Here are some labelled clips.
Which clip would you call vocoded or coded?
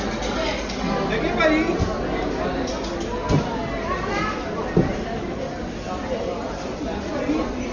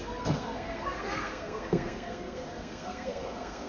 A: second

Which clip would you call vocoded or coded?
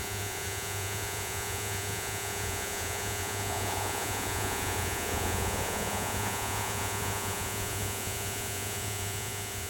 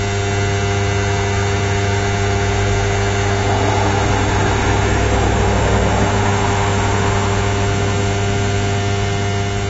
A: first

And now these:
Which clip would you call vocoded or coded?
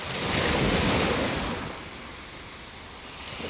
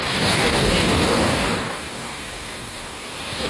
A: second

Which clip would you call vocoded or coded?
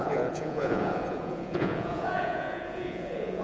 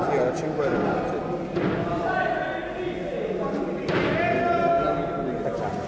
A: first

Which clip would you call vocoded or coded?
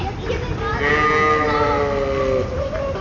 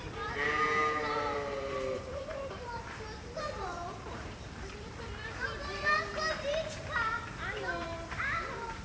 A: second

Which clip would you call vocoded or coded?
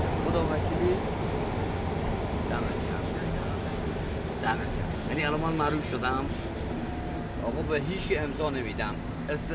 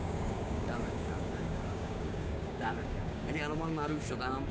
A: second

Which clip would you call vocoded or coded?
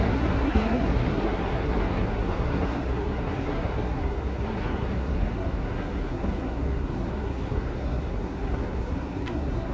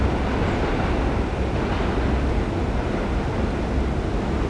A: first